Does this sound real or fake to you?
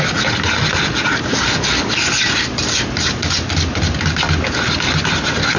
fake